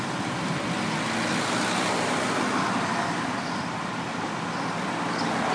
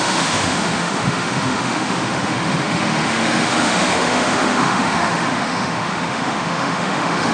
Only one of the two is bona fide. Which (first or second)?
first